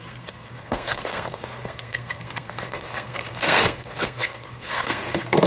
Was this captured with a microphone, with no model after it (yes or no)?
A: no